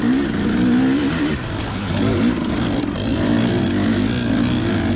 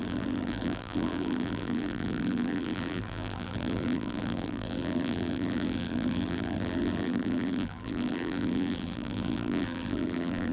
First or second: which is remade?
second